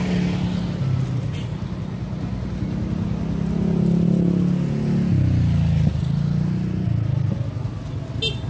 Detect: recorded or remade recorded